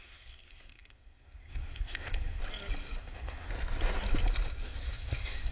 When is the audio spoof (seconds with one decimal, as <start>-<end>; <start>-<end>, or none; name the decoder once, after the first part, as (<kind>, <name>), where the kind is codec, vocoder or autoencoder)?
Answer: 0.0-2.4 (codec, SNAC); 3.0-3.5; 4.5-5.5